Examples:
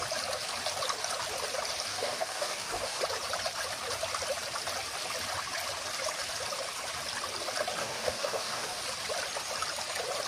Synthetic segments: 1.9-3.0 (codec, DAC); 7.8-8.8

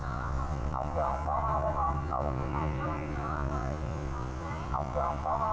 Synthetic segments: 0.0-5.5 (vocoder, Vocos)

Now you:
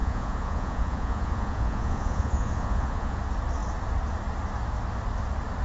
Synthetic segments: 0.0-3.2 (vocoder, Vocos)

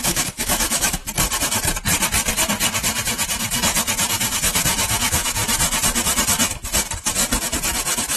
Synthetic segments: 0.0-1.0 (autoencoder, DAC-VAE); 4.1-5.4

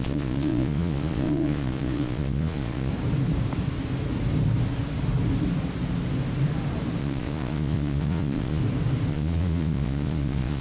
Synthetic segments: 0.0-2.9 (vocoder, Vocos); 7.0-8.6; 9.1-10.6

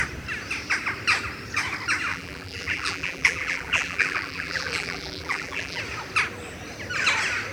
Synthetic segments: 2.1-5.8 (vocoder, BigVGAN v2)

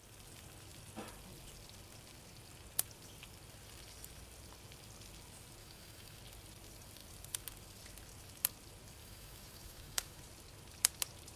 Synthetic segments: 5.6-6.2 (autoencoder, DAC-VAE); 9.0-10.2